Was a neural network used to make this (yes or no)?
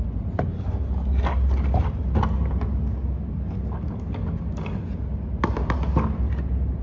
no